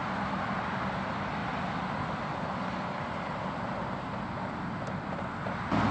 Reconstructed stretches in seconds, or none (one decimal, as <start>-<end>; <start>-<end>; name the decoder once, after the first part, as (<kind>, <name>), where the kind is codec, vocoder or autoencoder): none